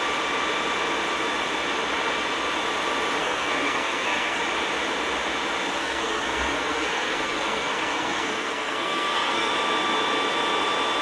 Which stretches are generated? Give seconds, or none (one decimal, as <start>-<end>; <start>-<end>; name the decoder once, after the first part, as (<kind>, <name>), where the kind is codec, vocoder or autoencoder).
3.2-4.4 (codec, SNAC); 5.8-9.5